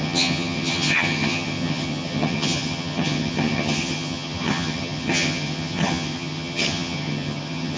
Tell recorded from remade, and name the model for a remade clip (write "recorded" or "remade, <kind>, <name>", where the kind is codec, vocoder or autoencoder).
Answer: remade, vocoder, HiFi-GAN